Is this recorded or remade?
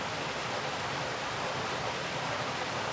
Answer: recorded